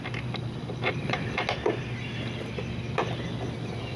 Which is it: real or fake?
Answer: real